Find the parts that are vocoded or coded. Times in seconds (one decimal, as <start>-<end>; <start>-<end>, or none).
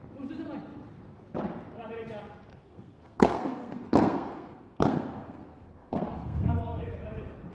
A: 2.5-6.9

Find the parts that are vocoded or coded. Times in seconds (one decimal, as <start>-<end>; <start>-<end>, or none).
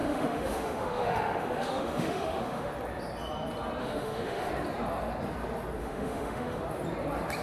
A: 0.0-2.7; 3.8-4.5; 5.8-6.6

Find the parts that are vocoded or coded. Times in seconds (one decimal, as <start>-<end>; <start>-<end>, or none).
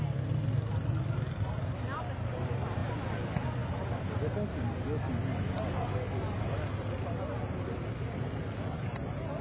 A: none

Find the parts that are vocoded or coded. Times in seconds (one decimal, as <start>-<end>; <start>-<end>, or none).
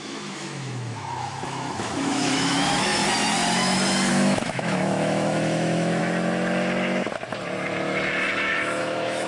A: 0.0-3.0; 4.1-6.0; 8.8-9.3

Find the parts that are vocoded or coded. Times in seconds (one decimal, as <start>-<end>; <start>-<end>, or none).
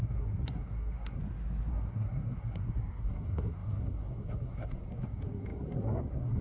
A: 0.0-1.2; 1.7-6.4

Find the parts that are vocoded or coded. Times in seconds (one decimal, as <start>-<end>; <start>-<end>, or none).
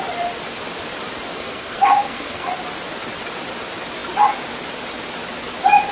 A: 1.3-2.5